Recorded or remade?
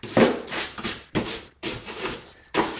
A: remade